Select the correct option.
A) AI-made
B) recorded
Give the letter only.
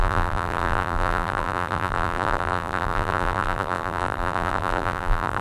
A